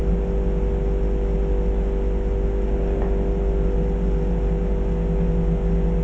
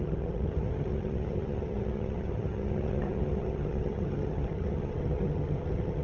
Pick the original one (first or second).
first